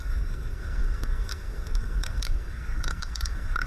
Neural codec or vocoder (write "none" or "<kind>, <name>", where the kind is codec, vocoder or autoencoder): codec, SNAC